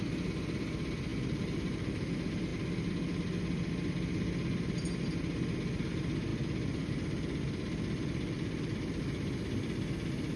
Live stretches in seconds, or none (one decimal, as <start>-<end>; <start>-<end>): 0.0-1.1; 1.9-6.3; 9.0-10.4